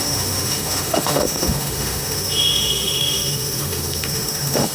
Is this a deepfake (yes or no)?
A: yes